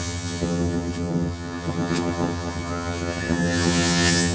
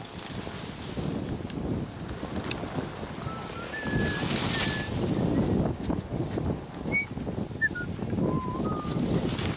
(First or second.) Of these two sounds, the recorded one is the second